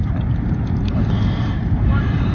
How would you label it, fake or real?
real